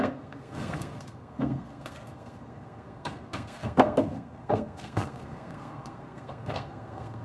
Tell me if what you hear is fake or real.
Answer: fake